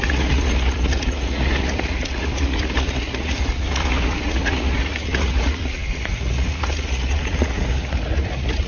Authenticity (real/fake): fake